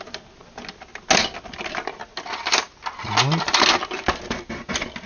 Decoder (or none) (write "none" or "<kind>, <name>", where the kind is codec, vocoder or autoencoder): none